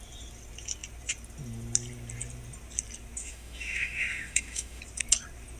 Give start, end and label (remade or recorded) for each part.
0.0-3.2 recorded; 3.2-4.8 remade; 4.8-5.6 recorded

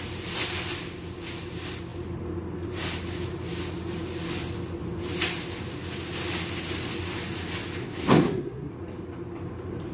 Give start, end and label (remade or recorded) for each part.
0.0-7.8 recorded; 7.8-8.7 remade; 8.7-9.9 recorded

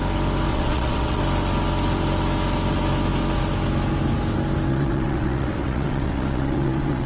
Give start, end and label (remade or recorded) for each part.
0.0-0.5 recorded; 0.5-1.2 remade; 1.2-4.7 recorded; 4.7-7.1 remade